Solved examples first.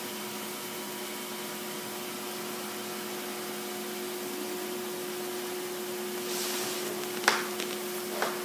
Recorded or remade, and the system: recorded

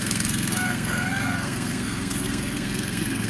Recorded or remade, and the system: remade, codec, SNAC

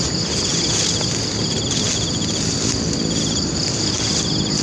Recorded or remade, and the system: recorded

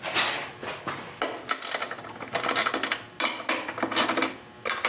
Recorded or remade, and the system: recorded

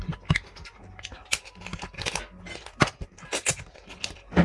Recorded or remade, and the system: recorded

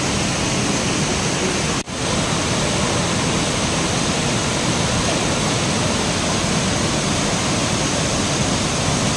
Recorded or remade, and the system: recorded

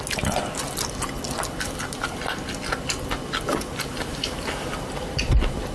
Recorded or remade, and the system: recorded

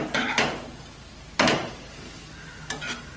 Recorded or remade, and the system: recorded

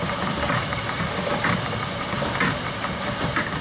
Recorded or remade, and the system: recorded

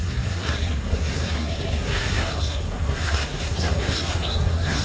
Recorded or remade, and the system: remade, codec, SNAC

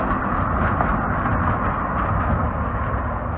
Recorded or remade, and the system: recorded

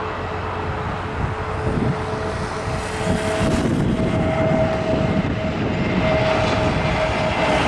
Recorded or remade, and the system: recorded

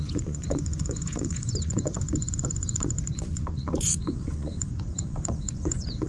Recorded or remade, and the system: remade, vocoder, Vocos